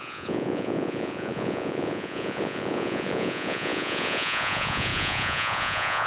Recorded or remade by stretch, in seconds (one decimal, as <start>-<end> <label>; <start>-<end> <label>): 0.0-6.1 remade